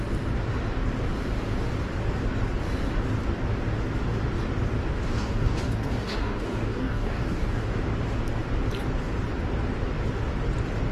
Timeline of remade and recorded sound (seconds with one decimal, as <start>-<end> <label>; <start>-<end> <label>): 0.0-5.1 recorded; 5.1-7.8 remade; 7.8-10.9 recorded